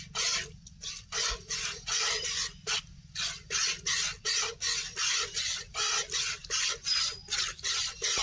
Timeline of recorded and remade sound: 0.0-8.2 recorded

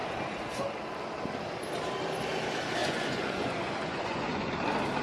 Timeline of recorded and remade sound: 0.0-2.8 recorded; 2.8-4.5 remade; 4.5-5.0 recorded

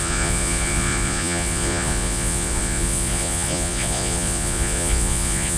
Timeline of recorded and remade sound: 0.0-5.6 remade

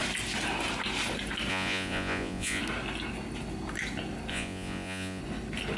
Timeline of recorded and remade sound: 0.0-1.5 recorded; 1.5-2.6 remade; 2.6-4.3 recorded; 4.3-5.2 remade; 5.2-5.8 recorded

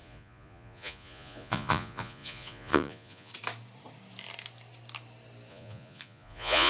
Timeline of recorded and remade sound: 0.0-3.3 remade; 3.3-5.5 recorded; 5.5-6.7 remade

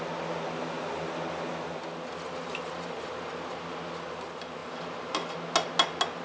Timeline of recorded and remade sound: 0.0-6.2 recorded

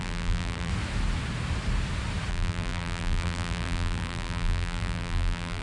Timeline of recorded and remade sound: 0.0-0.7 remade; 0.7-2.3 recorded; 2.3-5.6 remade

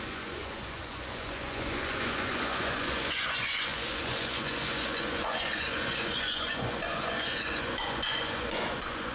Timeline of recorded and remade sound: 0.0-9.1 remade